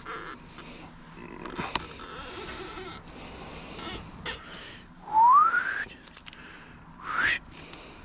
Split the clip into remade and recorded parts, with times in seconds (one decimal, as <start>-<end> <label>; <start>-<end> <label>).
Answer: 0.0-8.0 recorded